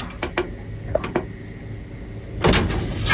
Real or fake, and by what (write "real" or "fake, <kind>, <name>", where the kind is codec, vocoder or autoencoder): real